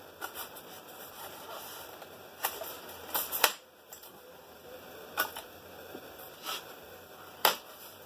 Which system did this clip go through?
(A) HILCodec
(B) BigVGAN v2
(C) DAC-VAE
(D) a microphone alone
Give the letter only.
B